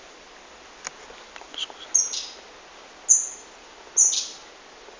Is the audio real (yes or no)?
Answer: yes